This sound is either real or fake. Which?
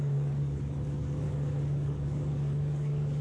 fake